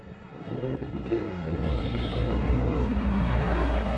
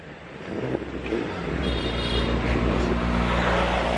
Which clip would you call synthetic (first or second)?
first